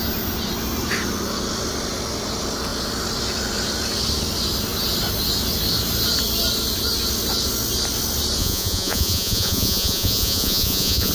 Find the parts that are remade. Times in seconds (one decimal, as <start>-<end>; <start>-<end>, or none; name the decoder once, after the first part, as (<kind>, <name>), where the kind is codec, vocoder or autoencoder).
8.4-11.1 (vocoder, Vocos)